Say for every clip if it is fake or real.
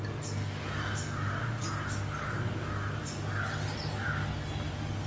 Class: real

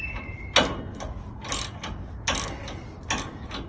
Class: real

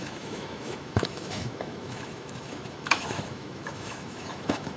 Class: fake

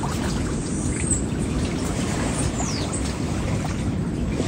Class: real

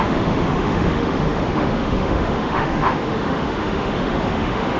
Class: fake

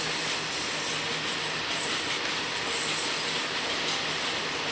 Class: real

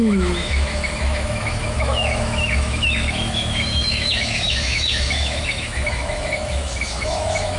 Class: fake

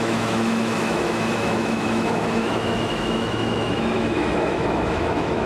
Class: fake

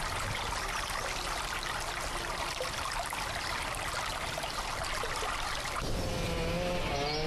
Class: real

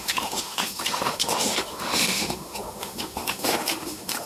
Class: fake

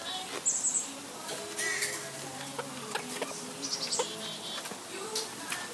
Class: real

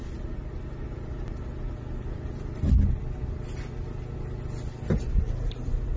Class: real